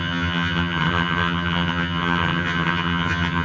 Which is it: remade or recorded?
remade